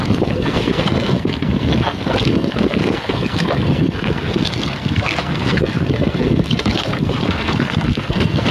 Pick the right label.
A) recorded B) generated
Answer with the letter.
B